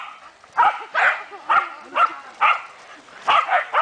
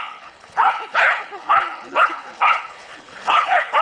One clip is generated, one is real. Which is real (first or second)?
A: first